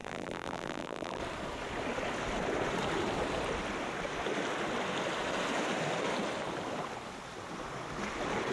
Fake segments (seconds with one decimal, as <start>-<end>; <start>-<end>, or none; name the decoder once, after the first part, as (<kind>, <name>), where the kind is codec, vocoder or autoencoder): 0.0-1.2 (vocoder, BigVGAN v2)